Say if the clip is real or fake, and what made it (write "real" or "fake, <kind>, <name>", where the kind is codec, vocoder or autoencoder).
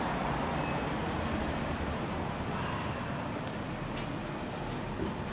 real